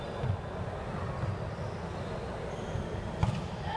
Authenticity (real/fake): real